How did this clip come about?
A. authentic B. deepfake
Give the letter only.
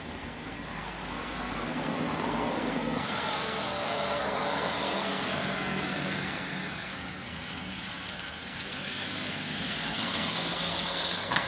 B